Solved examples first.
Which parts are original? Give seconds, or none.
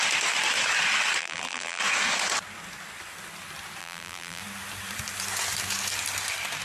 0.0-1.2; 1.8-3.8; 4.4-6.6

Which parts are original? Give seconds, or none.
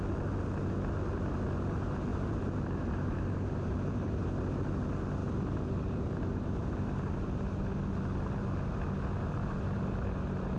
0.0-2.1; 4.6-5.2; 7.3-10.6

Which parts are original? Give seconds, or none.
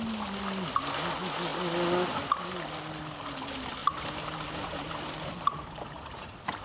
0.0-3.8